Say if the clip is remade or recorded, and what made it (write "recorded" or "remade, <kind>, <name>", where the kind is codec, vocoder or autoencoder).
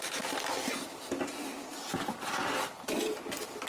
recorded